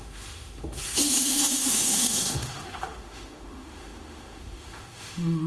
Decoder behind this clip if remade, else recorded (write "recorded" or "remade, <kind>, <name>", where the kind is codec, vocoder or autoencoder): remade, autoencoder, DAC-VAE